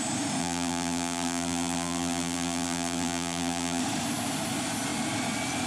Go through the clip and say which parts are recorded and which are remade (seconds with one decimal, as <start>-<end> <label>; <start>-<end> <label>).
0.0-0.4 recorded; 0.4-3.8 remade; 3.8-5.7 recorded